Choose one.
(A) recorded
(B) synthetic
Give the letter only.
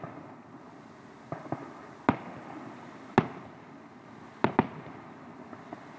A